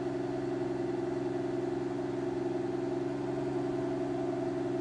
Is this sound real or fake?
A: real